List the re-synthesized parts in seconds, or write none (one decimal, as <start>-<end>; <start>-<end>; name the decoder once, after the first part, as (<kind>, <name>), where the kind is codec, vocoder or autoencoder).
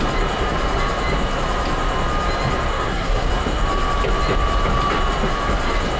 2.7-3.3 (codec, SNAC)